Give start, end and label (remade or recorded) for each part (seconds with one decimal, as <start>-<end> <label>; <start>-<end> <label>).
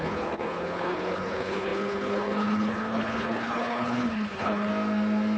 0.0-4.7 remade; 4.7-5.4 recorded